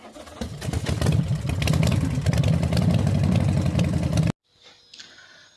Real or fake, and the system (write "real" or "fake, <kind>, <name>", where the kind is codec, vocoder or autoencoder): real